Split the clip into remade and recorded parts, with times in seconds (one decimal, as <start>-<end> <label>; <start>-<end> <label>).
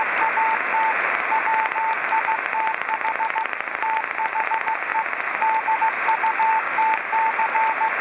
0.0-6.5 recorded; 6.5-7.1 remade; 7.1-8.0 recorded